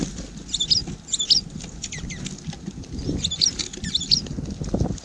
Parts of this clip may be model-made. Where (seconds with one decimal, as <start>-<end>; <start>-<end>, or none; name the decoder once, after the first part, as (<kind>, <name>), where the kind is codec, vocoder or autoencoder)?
none